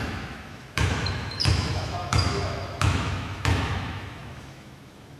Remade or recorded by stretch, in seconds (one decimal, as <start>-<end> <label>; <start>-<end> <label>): 0.0-5.2 remade